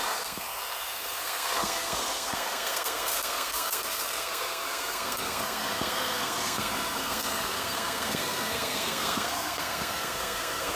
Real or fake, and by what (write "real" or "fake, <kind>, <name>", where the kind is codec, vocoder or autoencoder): fake, codec, SNAC